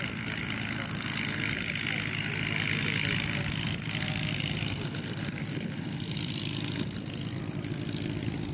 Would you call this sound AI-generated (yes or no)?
no